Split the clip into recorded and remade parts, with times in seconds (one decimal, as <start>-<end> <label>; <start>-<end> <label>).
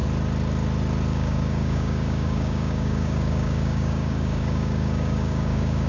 0.0-1.1 recorded; 1.1-5.9 remade